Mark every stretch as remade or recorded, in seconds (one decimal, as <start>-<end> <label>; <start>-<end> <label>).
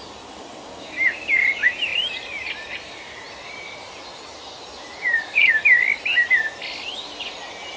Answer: 0.0-1.9 recorded; 1.9-5.5 remade; 5.5-7.8 recorded